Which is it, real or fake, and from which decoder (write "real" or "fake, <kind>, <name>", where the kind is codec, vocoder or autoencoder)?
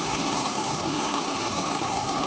fake, codec, SNAC